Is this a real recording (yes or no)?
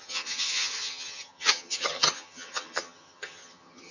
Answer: no